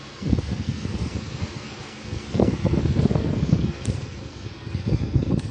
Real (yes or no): no